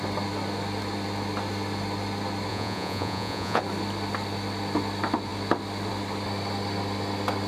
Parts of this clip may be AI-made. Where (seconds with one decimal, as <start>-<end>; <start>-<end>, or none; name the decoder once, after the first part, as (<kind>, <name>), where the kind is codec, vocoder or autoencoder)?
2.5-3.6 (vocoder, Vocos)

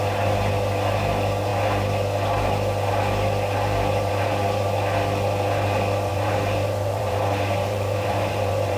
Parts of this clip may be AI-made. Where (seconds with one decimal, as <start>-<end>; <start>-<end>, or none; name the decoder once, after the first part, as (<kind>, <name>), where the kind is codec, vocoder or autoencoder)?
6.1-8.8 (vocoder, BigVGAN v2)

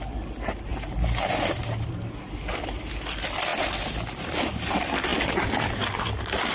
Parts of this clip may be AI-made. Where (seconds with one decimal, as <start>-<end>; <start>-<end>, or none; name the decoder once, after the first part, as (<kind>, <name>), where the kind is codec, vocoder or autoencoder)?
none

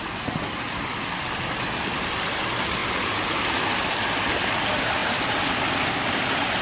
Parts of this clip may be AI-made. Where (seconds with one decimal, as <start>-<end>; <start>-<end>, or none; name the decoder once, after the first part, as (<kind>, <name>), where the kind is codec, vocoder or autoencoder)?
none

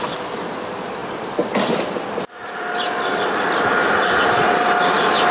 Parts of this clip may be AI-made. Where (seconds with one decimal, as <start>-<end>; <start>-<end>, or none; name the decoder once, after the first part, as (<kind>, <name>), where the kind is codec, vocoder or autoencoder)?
none